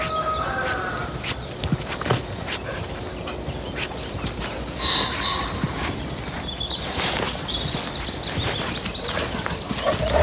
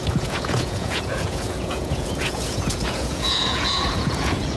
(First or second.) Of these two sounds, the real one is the first